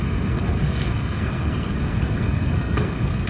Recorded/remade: remade